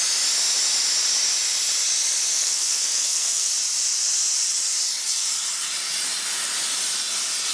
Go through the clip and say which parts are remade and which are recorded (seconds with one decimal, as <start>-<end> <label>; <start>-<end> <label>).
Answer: 0.0-2.3 recorded; 2.3-3.5 remade; 3.5-7.5 recorded